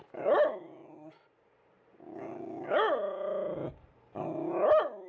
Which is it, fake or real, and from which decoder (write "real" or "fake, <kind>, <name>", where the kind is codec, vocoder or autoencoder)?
real